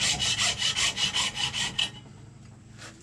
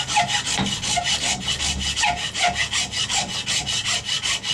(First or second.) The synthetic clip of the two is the first